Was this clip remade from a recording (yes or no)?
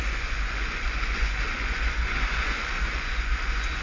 yes